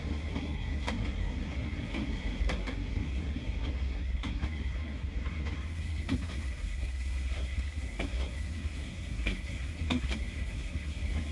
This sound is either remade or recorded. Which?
remade